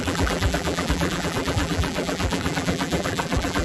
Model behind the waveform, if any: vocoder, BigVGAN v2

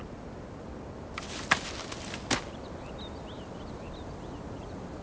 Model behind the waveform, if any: none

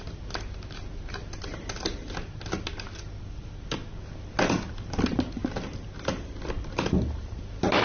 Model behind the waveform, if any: none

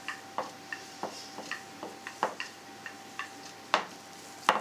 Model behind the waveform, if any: none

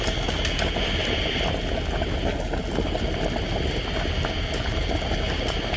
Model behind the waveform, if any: none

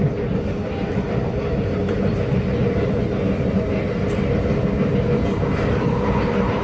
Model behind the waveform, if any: none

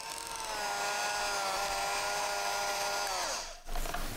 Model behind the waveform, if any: none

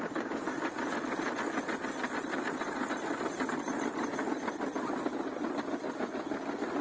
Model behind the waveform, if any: none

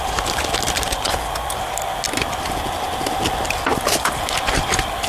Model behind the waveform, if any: none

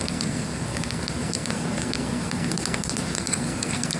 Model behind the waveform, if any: codec, SNAC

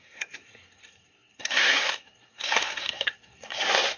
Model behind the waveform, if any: codec, SNAC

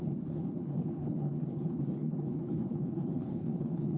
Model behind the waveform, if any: codec, HILCodec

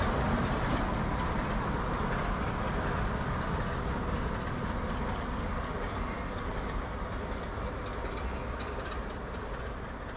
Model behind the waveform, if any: none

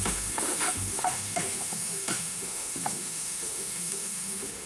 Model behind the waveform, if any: autoencoder, DAC-VAE